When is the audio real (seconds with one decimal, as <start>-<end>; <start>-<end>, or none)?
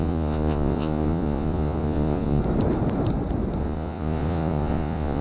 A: 2.4-3.6